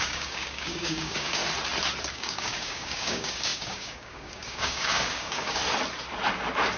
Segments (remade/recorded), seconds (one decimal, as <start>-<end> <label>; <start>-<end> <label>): 0.0-1.4 remade; 1.4-2.1 recorded; 2.1-5.6 remade; 5.6-6.8 recorded